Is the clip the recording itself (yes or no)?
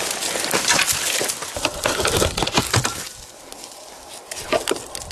yes